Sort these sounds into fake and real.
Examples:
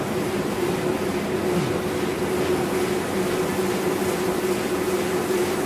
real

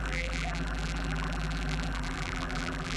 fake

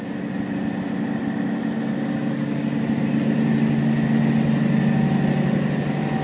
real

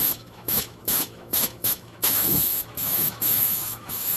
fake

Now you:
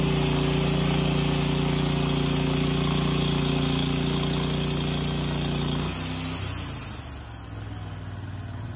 real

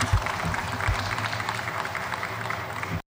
real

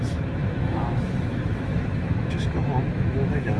fake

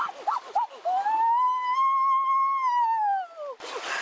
real